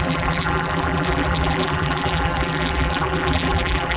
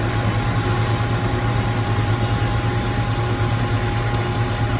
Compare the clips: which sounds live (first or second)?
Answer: second